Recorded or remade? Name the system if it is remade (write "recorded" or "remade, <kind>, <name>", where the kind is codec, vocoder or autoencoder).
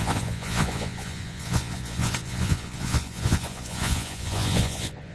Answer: remade, vocoder, Vocos